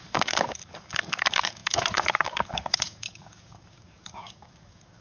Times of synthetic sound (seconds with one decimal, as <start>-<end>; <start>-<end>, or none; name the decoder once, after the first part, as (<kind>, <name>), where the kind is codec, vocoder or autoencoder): 0.0-5.0 (codec, DAC)